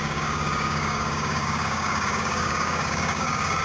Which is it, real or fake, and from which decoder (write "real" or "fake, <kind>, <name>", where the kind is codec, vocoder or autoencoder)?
fake, codec, DAC